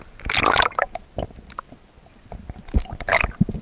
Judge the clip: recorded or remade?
recorded